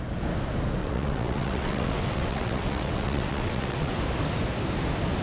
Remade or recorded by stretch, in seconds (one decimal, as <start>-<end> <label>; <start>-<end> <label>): 0.0-0.8 recorded; 0.8-3.9 remade; 3.9-5.2 recorded